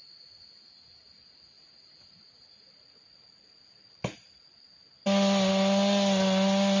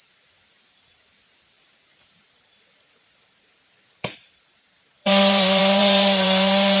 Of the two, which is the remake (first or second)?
second